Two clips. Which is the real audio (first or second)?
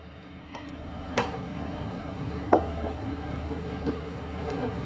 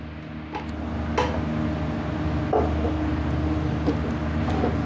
second